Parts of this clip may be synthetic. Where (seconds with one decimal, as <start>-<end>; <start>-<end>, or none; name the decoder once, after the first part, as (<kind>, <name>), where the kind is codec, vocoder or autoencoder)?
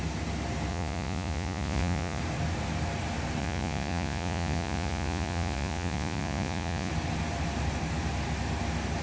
0.7-2.2 (vocoder, Vocos); 3.4-6.9